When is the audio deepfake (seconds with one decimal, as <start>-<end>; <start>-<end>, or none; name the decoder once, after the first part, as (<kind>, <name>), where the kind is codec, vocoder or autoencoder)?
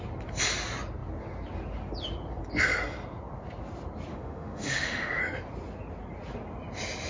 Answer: 4.1-5.2 (autoencoder, DAC-VAE)